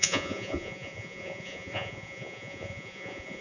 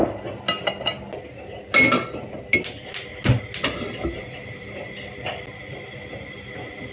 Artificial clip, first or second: first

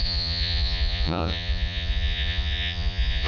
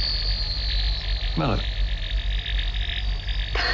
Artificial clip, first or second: first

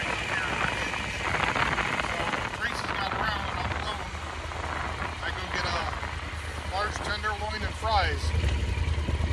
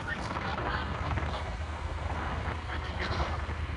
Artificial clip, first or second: second